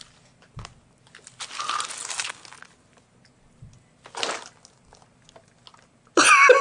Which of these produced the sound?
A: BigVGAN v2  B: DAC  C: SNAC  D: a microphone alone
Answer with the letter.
D